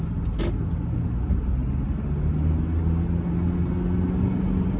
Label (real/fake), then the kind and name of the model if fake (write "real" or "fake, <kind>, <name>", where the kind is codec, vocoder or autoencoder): real